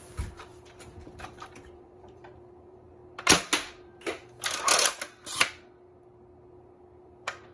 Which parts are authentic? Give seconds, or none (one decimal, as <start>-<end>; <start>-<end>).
0.5-1.7; 3.0-3.7; 4.2-7.0